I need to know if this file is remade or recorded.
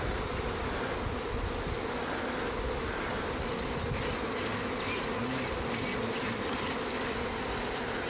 recorded